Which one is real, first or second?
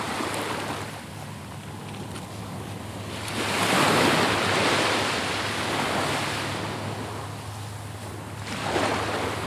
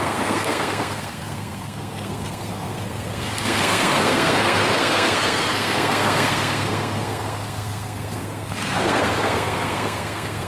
first